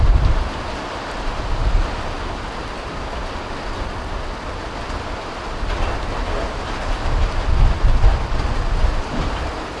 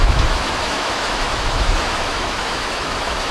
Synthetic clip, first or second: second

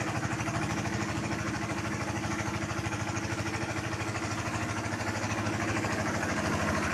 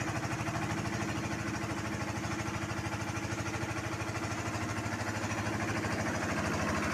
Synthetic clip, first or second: first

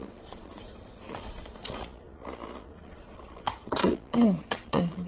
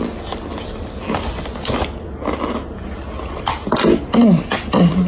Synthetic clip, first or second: first